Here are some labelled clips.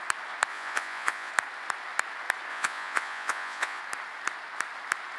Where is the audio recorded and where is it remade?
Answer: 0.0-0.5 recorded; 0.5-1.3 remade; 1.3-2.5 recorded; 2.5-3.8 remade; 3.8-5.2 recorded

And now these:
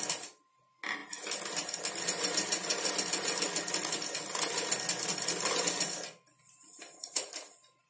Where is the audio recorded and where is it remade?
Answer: 0.0-7.9 recorded

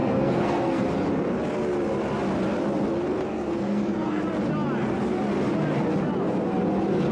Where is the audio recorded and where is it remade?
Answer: 0.0-0.8 remade; 0.8-3.3 recorded; 3.3-4.2 remade; 4.2-7.1 recorded

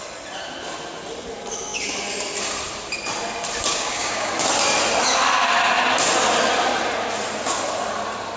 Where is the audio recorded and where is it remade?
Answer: 0.0-3.7 recorded; 3.7-4.3 remade; 4.3-8.4 recorded

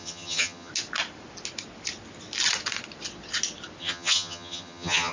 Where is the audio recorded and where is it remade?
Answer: 0.0-0.7 remade; 0.7-3.8 recorded; 3.8-5.1 remade